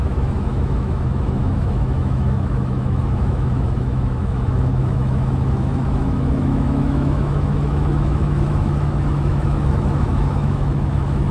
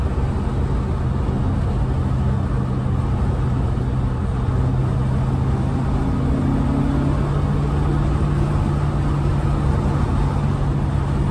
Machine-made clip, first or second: first